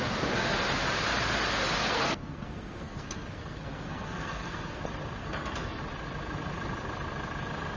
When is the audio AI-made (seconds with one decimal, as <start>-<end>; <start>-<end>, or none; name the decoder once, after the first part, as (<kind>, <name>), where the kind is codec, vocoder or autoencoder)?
1.8-4.8 (codec, SNAC); 5.2-5.8